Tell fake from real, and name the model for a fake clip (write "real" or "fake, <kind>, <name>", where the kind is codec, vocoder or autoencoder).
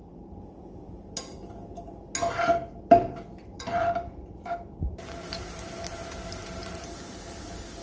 real